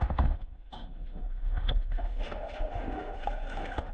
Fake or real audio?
fake